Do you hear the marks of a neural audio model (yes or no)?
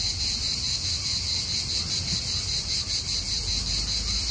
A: no